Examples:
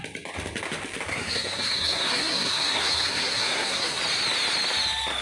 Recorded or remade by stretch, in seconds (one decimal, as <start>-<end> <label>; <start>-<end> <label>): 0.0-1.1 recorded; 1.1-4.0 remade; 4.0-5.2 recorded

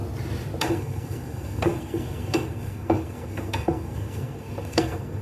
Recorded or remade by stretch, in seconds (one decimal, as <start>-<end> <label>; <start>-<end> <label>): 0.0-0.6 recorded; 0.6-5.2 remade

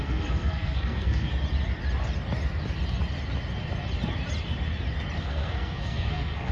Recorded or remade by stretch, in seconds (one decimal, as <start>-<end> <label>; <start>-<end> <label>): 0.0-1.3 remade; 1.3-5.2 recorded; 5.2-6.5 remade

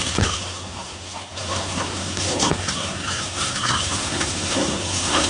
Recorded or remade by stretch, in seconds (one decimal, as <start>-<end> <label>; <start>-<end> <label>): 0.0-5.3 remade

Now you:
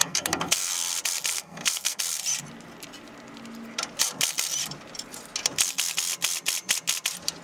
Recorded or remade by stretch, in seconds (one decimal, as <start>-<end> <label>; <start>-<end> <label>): 0.0-0.7 remade; 0.7-1.3 recorded; 1.3-2.0 remade; 2.0-7.4 recorded